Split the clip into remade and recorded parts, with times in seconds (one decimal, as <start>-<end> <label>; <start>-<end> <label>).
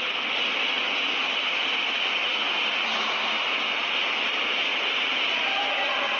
0.0-6.2 recorded